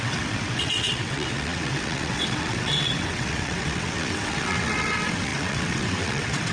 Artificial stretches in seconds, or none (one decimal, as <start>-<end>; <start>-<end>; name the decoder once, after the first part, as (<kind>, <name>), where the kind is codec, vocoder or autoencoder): 0.0-6.5 (vocoder, WaveNeXt)